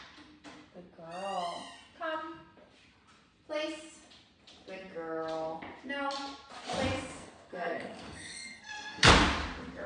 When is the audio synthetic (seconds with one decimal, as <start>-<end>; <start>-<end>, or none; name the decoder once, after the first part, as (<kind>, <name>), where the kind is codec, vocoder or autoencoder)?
7.1-9.1 (codec, SNAC)